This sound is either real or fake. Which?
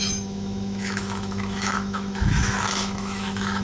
fake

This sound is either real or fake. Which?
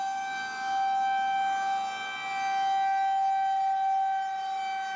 real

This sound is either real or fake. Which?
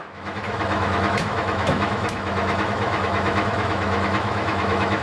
fake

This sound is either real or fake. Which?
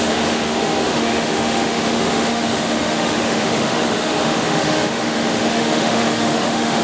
fake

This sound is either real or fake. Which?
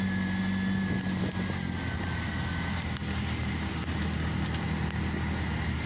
real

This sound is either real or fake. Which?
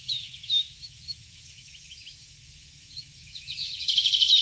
fake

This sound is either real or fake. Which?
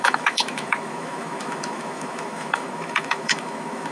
fake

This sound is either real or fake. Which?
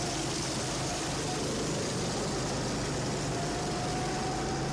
real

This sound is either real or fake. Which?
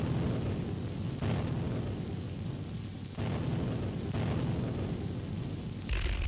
real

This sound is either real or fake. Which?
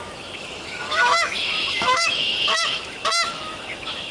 fake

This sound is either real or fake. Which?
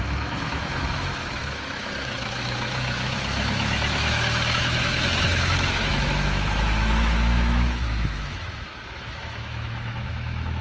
fake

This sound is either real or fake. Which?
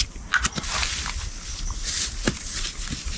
real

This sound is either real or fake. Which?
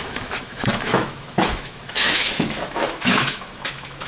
fake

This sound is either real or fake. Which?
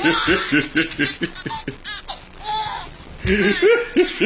real